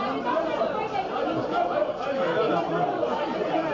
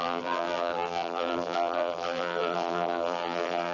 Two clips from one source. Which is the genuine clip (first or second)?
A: first